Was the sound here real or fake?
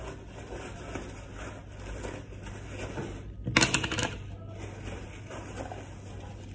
real